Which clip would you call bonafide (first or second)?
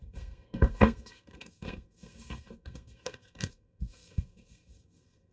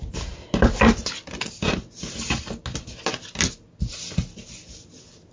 second